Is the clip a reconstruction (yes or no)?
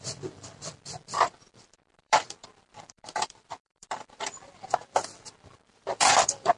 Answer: yes